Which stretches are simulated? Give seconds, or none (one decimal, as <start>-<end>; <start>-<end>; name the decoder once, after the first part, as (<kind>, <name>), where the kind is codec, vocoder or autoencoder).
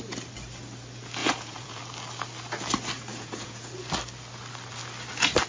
1.2-1.8 (vocoder, Vocos); 3.1-3.7